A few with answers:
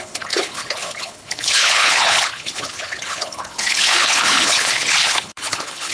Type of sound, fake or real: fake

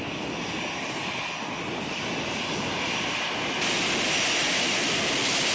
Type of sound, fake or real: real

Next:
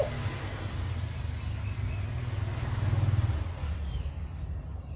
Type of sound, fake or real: real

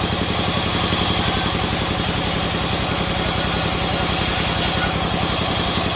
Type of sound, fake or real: real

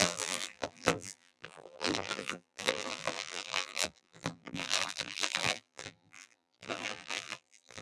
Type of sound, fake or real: fake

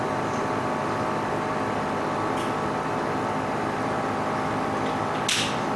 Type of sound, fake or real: real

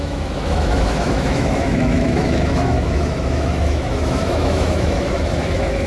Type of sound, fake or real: fake